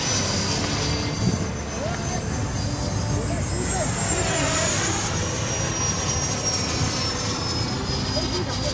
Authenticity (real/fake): real